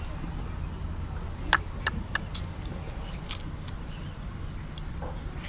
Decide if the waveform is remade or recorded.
recorded